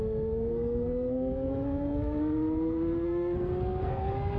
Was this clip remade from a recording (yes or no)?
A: yes